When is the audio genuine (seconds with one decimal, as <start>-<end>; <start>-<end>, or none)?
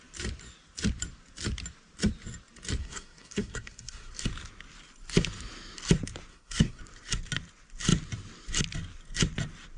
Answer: 0.0-2.8; 4.1-6.3; 6.8-9.8